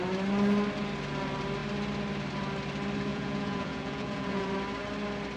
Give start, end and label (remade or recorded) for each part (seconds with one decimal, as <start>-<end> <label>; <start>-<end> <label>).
0.0-3.1 recorded; 3.1-4.5 remade; 4.5-5.4 recorded